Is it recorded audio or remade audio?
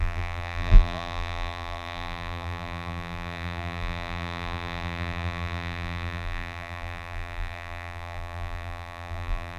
remade